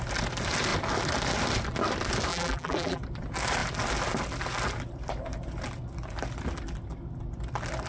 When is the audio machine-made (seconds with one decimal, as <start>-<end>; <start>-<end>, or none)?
2.3-3.0